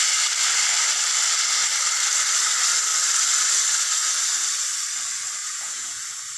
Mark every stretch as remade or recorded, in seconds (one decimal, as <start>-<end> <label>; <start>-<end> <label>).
0.0-5.4 recorded; 5.4-6.0 remade; 6.0-6.4 recorded

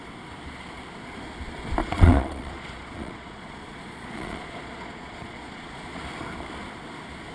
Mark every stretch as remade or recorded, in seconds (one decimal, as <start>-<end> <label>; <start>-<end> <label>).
0.0-1.8 recorded; 1.8-6.0 remade; 6.0-7.3 recorded

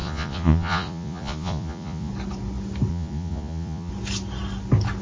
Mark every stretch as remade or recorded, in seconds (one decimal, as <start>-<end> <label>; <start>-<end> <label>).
0.0-2.1 remade; 2.1-2.9 recorded; 2.9-3.9 remade; 3.9-5.0 recorded

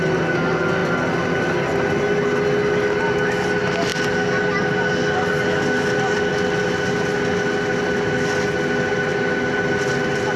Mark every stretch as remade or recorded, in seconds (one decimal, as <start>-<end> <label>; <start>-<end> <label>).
0.0-10.4 recorded

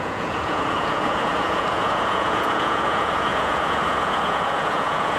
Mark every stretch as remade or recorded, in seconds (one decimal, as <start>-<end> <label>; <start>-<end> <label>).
0.0-5.2 remade

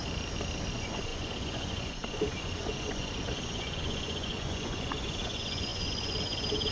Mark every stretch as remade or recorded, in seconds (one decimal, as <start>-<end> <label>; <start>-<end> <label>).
0.0-0.7 recorded; 0.7-6.7 remade